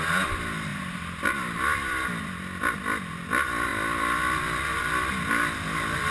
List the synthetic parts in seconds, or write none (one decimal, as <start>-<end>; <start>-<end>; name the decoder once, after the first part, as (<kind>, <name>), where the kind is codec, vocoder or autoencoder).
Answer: 0.7-2.0 (vocoder, BigVGAN v2)